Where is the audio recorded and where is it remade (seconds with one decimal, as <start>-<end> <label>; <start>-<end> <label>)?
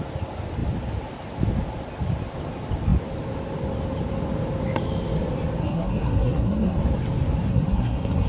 0.0-5.6 recorded; 5.6-6.8 remade; 6.8-7.5 recorded; 7.5-8.3 remade